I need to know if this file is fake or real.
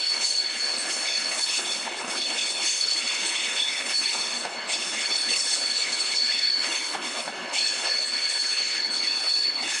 fake